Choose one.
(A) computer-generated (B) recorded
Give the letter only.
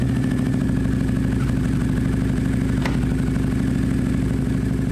B